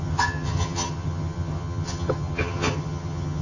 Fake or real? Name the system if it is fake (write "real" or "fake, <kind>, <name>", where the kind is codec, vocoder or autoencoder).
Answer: fake, vocoder, HiFi-GAN